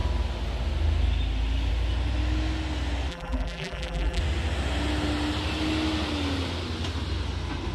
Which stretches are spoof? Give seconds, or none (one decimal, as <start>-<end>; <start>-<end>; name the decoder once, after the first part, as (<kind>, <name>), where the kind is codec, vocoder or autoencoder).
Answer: 3.1-4.2 (vocoder, BigVGAN v2)